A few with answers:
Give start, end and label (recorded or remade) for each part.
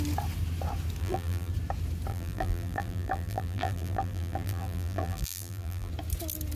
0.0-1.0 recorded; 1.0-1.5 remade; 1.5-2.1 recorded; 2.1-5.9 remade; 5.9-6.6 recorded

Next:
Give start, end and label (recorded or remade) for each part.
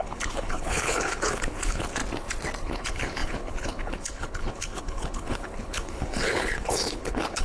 0.0-2.0 remade; 2.0-2.6 recorded; 2.6-7.4 remade